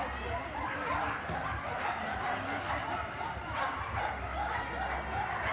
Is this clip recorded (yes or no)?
yes